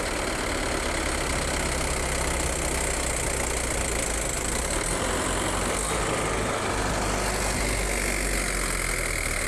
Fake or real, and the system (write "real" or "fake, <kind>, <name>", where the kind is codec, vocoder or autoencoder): real